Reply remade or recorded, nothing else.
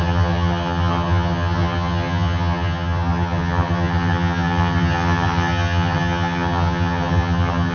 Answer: remade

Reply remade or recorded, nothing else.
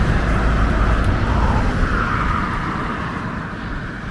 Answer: recorded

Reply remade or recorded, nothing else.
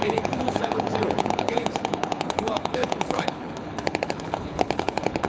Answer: remade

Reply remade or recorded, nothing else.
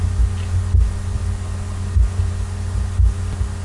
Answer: recorded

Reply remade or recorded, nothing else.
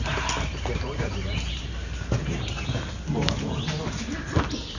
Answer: recorded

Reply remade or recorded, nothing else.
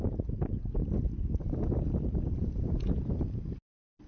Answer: recorded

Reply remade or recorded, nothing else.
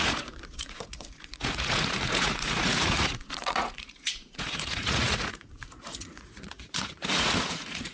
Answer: remade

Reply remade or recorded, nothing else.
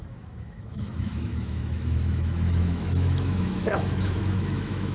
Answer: remade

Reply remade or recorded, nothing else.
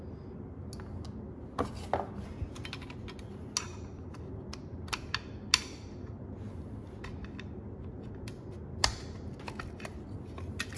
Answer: recorded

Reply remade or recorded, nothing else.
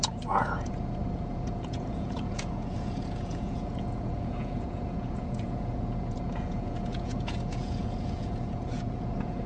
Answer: remade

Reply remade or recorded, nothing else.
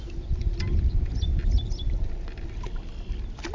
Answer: recorded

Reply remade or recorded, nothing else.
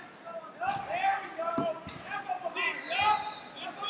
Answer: recorded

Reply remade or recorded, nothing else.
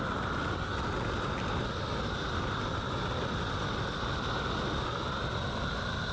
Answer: recorded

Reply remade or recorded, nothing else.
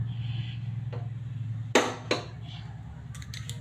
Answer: recorded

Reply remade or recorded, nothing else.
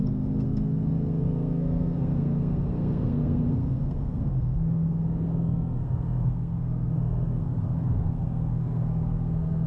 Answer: remade